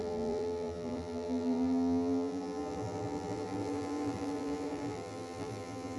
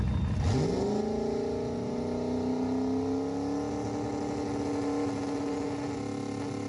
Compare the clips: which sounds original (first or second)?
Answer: second